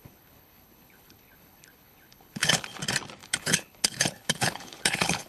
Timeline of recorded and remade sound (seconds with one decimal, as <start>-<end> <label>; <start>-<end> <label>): 0.0-2.8 remade; 2.8-3.2 recorded; 3.2-5.3 remade